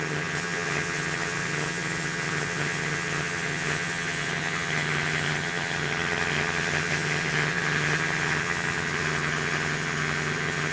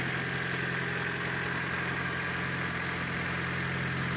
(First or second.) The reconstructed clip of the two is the first